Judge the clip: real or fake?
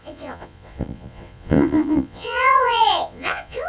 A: fake